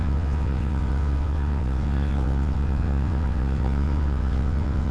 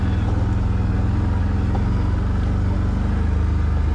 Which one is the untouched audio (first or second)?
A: second